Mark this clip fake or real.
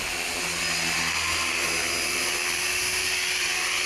real